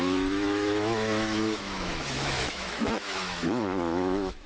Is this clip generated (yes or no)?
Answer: yes